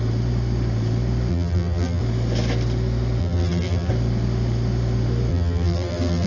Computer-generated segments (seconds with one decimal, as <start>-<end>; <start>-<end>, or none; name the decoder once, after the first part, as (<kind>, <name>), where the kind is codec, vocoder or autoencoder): 1.3-2.0 (vocoder, BigVGAN v2); 3.2-3.9; 5.3-6.3